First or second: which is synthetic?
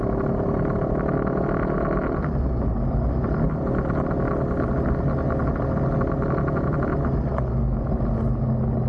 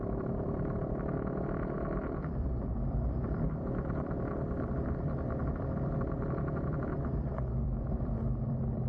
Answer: second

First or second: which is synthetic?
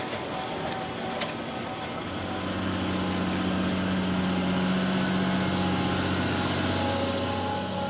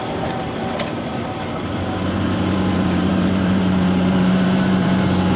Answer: second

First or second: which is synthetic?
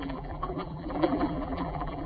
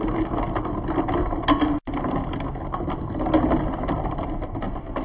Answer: first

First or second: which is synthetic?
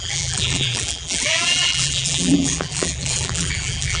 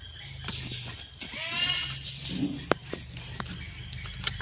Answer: first